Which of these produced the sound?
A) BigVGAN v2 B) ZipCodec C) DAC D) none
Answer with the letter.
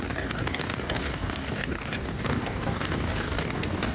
C